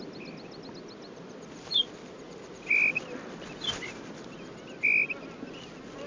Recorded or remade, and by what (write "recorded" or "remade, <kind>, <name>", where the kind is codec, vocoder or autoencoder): recorded